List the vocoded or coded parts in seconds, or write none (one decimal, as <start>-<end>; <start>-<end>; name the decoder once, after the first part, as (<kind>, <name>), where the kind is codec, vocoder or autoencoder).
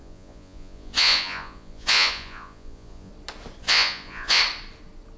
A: 0.0-3.1 (vocoder, Vocos); 3.6-4.4